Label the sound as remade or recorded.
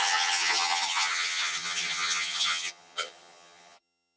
remade